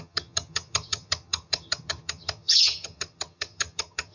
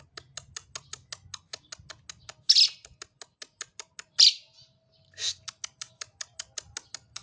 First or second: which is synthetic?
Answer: first